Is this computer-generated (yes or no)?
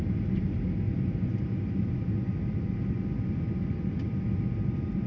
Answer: no